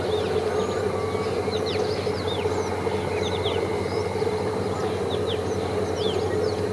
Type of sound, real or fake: real